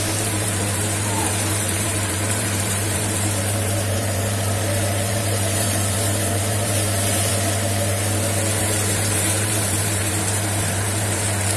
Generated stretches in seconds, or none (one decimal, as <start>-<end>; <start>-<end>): 0.0-7.3; 8.6-11.6